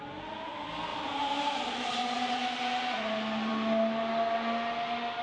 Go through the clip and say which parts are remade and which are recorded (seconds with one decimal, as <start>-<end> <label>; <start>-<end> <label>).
0.0-0.9 recorded; 0.9-2.8 remade; 2.8-5.2 recorded